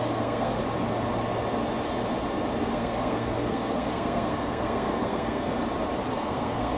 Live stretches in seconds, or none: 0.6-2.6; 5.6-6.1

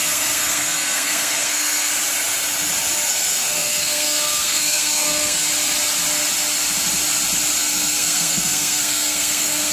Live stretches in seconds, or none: 1.9-3.1; 5.5-7.6

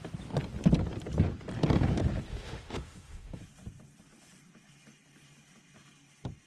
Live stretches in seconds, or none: 0.0-2.3; 3.4-6.5

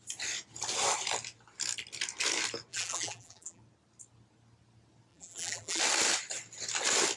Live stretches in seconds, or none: 0.0-2.7; 3.6-5.1; 5.8-7.2

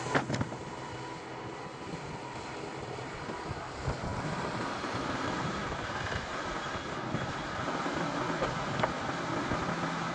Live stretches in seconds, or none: 0.0-4.1; 8.0-10.1